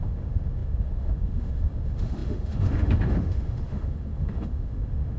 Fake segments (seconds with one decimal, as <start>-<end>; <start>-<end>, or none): 0.0-5.2